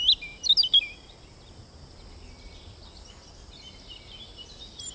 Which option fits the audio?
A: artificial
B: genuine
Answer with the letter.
B